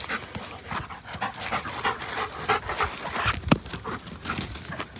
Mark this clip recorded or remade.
recorded